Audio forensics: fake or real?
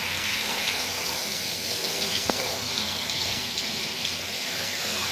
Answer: fake